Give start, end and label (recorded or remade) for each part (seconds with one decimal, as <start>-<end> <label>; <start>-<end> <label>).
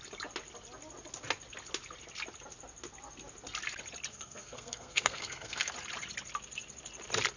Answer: 0.0-4.1 recorded; 4.1-5.7 remade; 5.7-7.4 recorded